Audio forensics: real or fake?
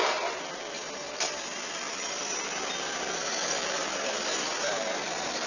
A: fake